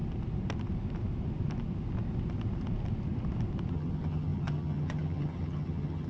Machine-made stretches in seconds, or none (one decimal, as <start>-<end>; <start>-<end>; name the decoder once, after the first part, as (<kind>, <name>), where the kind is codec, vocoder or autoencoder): 3.7-6.1 (vocoder, HiFi-GAN)